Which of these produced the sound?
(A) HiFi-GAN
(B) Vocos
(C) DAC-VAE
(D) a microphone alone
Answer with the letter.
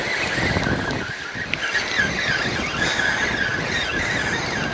D